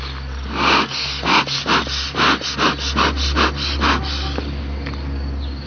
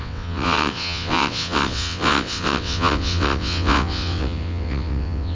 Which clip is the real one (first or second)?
first